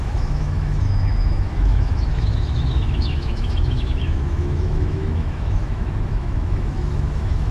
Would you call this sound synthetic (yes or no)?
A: yes